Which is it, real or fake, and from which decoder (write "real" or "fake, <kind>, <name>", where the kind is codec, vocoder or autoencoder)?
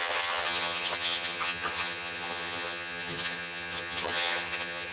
fake, vocoder, HiFi-GAN